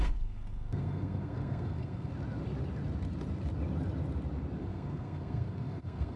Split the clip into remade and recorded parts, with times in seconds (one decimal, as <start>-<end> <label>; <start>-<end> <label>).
0.0-2.1 remade; 2.1-4.6 recorded; 4.6-6.2 remade